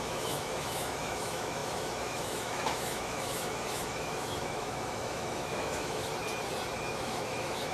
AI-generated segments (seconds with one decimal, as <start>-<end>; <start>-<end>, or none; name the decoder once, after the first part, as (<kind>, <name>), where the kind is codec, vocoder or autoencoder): 0.0-6.1 (autoencoder, DAC-VAE); 6.9-7.7